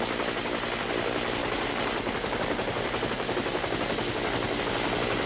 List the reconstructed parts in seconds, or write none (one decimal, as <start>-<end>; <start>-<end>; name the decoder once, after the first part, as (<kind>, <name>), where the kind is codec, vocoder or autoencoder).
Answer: 1.4-4.6 (vocoder, BigVGAN v2)